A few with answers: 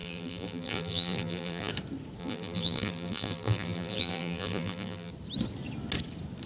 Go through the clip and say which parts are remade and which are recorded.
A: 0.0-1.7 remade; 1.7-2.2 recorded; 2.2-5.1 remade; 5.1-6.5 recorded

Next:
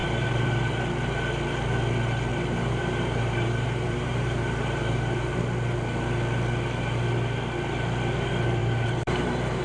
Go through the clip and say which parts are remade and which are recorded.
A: 0.0-0.8 remade; 0.8-2.3 recorded; 2.3-5.4 remade; 5.4-8.6 recorded; 8.6-9.6 remade

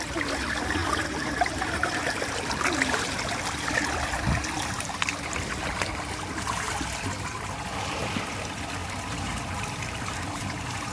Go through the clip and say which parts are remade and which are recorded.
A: 0.0-0.8 recorded; 0.8-1.5 remade; 1.5-8.8 recorded; 8.8-10.9 remade

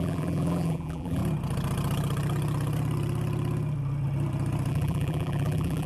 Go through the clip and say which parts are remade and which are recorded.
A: 0.0-1.2 remade; 1.2-4.7 recorded; 4.7-5.9 remade